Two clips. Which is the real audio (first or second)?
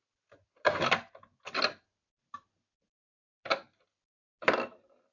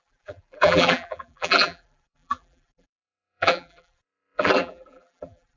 first